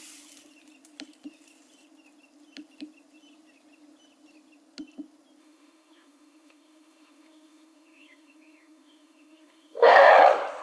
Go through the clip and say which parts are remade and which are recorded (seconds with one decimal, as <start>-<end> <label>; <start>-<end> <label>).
0.0-5.4 recorded; 5.4-10.1 remade; 10.1-10.6 recorded